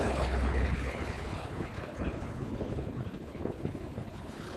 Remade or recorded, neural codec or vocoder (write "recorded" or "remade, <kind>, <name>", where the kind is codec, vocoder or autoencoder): remade, codec, HILCodec